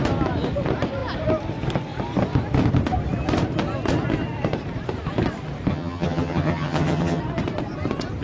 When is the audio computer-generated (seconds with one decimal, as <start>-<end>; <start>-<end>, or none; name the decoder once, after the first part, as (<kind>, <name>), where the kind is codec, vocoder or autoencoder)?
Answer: 5.7-7.2 (vocoder, HiFi-GAN)